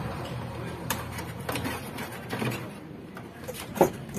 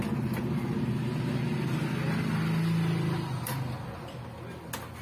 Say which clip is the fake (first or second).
first